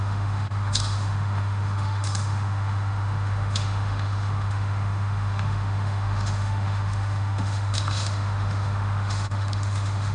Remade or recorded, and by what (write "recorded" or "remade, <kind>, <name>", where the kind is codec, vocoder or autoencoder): remade, autoencoder, DAC-VAE